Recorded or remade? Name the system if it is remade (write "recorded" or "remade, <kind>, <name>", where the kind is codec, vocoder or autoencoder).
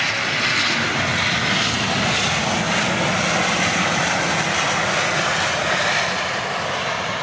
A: recorded